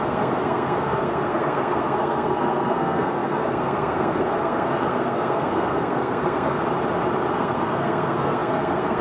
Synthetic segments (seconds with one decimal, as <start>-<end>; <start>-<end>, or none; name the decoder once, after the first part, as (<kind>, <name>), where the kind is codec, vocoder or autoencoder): 0.0-6.6 (codec, SNAC); 7.3-9.0